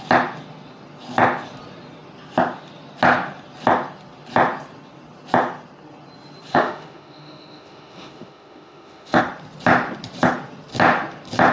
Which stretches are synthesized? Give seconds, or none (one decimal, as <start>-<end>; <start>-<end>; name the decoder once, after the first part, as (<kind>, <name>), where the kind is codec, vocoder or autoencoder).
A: 6.5-9.2 (autoencoder, DAC-VAE)